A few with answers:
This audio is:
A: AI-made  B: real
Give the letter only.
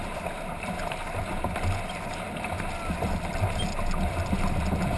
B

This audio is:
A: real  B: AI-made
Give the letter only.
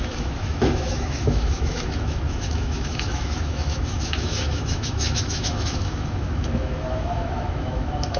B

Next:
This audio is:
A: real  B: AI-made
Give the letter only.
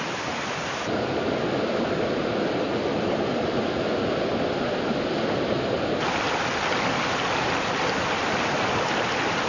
A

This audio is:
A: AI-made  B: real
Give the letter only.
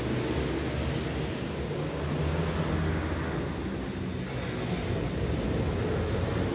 B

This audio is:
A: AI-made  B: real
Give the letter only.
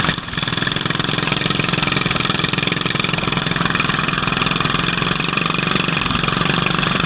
B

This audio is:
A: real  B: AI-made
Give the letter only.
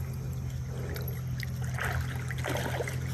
A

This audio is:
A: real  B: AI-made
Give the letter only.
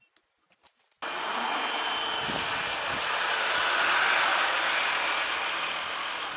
A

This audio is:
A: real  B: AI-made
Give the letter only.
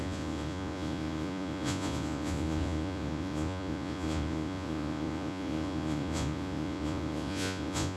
B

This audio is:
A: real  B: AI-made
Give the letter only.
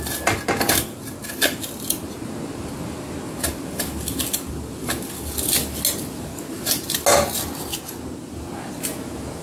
A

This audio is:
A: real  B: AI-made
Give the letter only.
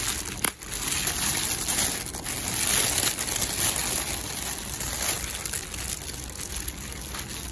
A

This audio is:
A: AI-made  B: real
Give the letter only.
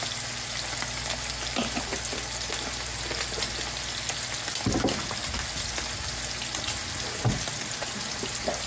B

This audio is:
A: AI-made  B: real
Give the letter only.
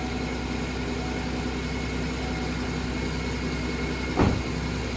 B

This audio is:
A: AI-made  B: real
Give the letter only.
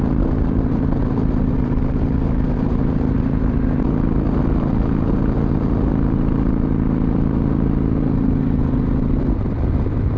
B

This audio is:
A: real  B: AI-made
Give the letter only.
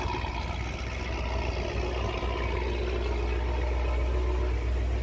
A